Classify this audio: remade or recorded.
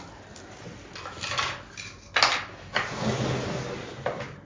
recorded